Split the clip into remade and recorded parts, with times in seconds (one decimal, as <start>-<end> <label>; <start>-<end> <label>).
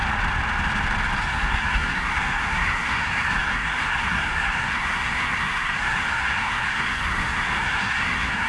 0.0-1.2 recorded; 1.2-8.5 remade